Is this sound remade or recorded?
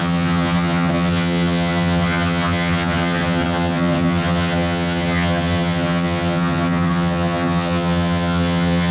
remade